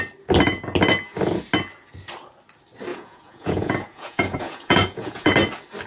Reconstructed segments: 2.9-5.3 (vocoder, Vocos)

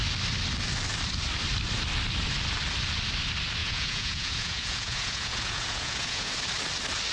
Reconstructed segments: 3.6-6.3 (vocoder, Vocos)

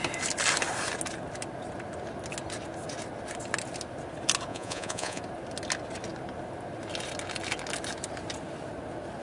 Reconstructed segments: 4.5-5.2 (vocoder, Vocos)

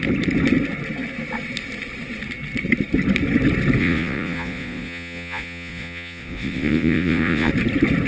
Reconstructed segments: 3.8-7.5 (vocoder, Vocos)